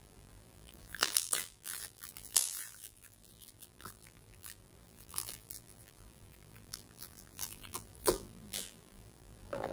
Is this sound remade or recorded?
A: remade